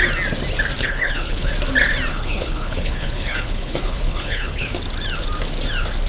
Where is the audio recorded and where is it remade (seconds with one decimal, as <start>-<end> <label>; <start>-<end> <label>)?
0.0-0.8 recorded; 0.8-1.5 remade; 1.5-2.1 recorded; 2.1-4.7 remade; 4.7-6.1 recorded